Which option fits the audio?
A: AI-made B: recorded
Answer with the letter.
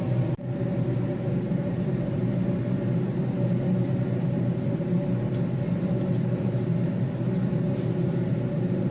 B